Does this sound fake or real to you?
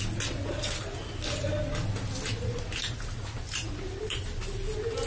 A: real